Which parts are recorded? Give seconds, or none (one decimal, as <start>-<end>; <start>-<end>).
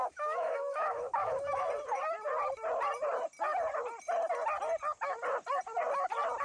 1.7-6.4